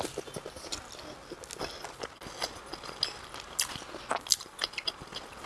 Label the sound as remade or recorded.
recorded